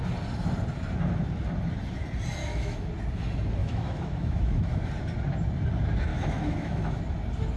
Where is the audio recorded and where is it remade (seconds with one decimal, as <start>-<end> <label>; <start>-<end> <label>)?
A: 0.0-2.4 recorded; 2.4-2.9 remade; 2.9-3.6 recorded; 3.6-4.9 remade; 4.9-6.1 recorded; 6.1-7.0 remade; 7.0-7.6 recorded